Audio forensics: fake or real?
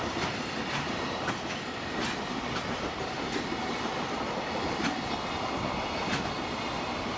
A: real